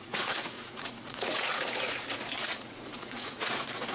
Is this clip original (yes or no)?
no